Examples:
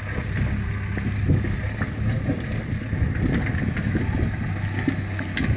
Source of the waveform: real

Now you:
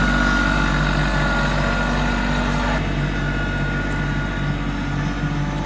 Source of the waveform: real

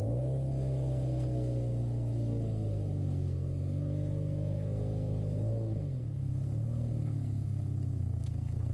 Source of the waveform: fake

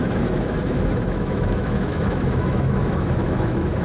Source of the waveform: fake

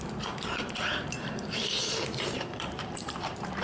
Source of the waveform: fake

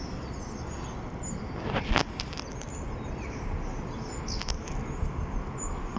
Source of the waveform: real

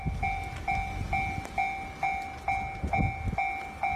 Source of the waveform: real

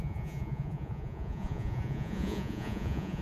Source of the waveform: fake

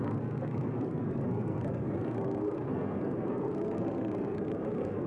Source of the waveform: fake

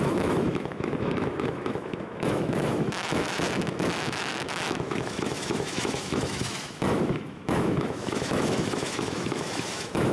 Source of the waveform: fake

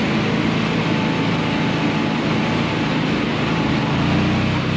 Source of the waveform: real